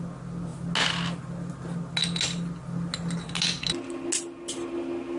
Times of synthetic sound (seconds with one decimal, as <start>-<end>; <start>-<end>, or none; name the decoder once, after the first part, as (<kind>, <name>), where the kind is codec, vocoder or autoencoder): none